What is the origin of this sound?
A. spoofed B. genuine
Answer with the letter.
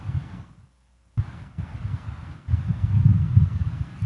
A